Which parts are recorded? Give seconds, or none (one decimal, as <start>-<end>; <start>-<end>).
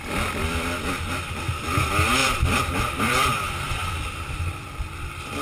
0.0-2.2; 4.4-5.4